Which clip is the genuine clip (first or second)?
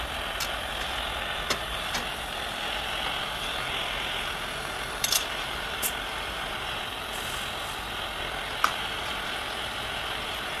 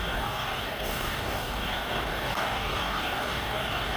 first